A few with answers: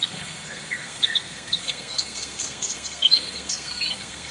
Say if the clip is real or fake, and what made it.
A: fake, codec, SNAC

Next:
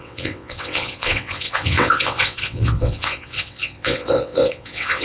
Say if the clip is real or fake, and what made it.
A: fake, vocoder, WaveNeXt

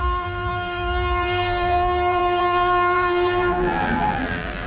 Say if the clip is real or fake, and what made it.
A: fake, vocoder, BigVGAN v2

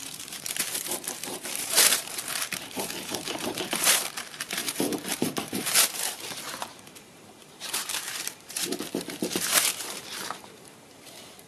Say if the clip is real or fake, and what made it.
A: fake, vocoder, BigVGAN v2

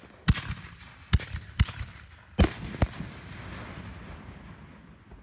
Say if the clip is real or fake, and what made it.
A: real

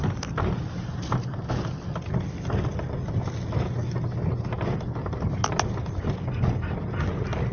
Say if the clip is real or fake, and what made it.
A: real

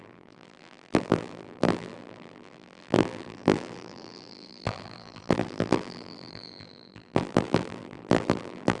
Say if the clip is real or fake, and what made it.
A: fake, vocoder, BigVGAN v2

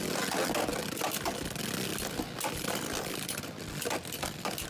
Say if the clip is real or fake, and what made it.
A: real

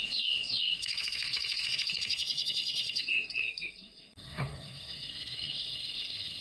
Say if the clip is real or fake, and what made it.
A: fake, codec, SNAC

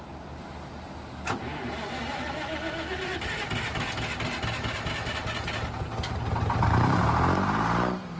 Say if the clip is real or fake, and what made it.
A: real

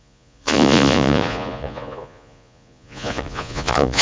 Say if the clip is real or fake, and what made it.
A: fake, vocoder, Vocos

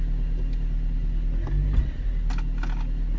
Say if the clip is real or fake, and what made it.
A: real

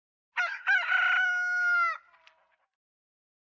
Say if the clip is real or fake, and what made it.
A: real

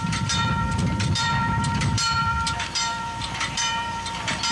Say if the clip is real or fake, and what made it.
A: fake, vocoder, BigVGAN v2